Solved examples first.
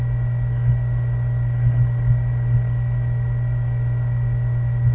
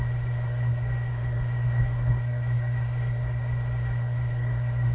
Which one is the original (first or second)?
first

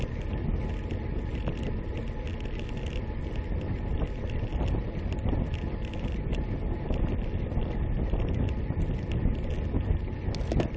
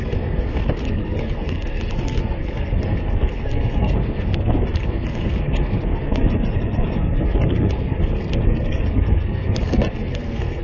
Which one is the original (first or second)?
first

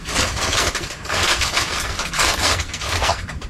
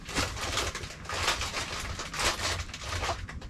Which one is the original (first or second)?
second